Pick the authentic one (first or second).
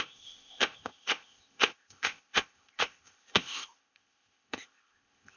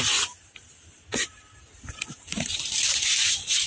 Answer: second